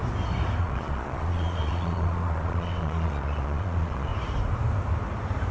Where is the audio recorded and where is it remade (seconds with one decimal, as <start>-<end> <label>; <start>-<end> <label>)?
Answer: 0.0-0.6 recorded; 0.6-4.1 remade; 4.1-5.5 recorded